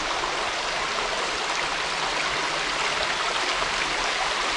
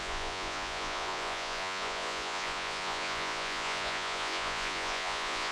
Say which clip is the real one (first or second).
first